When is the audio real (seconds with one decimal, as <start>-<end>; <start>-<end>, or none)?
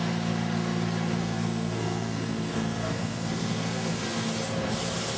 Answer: 0.0-1.2; 4.3-5.2